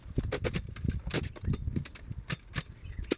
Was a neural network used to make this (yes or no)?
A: no